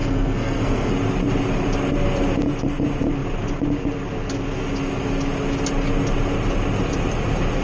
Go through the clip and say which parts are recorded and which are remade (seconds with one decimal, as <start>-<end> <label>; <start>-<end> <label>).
0.0-0.9 remade; 0.9-7.6 recorded